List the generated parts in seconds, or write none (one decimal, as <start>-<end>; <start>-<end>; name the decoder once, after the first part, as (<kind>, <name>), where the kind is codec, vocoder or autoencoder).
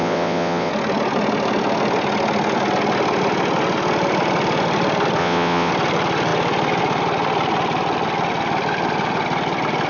0.0-0.7 (vocoder, WaveNeXt); 5.2-5.7